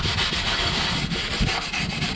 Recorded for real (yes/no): yes